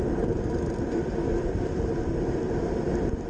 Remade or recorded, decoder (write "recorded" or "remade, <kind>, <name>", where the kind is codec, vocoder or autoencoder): recorded